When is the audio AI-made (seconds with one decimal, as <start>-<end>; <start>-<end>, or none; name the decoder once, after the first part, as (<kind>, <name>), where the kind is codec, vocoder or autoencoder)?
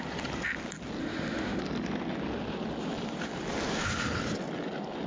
1.0-1.6 (autoencoder, DAC-VAE)